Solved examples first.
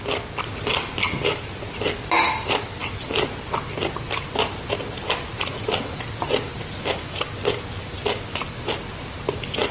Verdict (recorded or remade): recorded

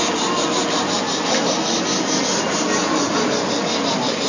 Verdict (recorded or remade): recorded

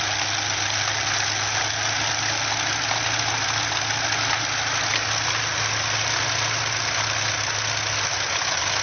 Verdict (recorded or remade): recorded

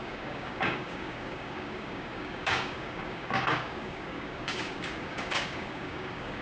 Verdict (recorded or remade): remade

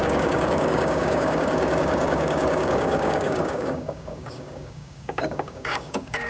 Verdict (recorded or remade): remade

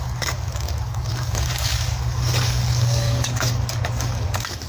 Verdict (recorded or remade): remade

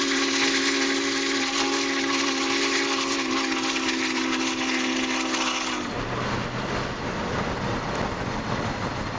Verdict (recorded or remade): recorded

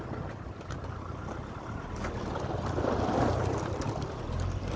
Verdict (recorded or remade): recorded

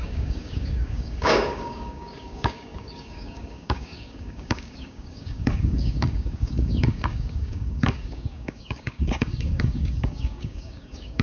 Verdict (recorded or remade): remade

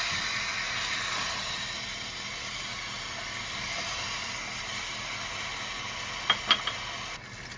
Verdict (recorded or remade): recorded